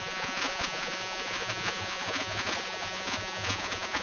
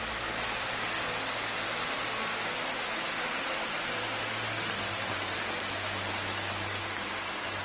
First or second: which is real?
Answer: second